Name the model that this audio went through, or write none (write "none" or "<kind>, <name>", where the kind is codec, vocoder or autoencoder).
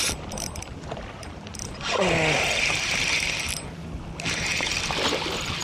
none